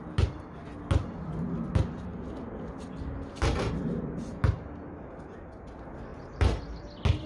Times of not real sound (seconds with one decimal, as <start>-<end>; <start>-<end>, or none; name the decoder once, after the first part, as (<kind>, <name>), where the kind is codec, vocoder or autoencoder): 6.1-6.6 (vocoder, BigVGAN v2)